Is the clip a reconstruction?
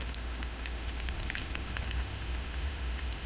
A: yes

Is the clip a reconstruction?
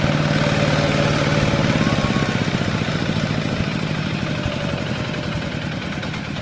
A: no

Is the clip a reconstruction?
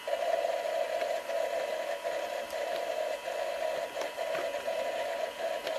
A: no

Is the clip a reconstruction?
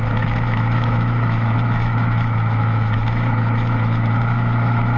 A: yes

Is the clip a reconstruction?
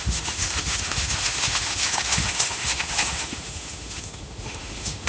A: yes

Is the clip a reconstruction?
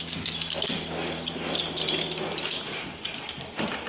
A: no